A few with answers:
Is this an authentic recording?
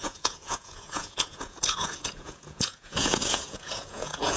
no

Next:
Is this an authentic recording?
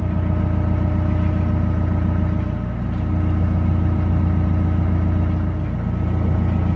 yes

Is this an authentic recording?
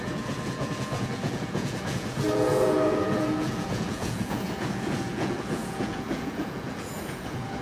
no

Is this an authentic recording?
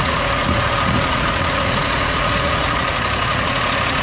no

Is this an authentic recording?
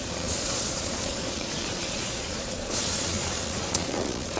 no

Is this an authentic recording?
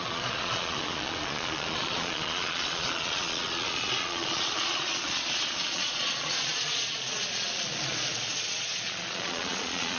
no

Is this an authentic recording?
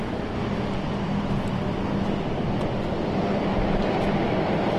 yes